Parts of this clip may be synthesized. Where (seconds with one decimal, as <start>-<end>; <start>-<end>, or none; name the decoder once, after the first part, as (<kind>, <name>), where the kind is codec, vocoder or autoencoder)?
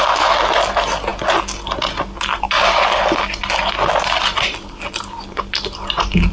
none